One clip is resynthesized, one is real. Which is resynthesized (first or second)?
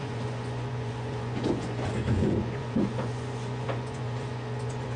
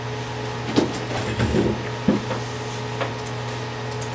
first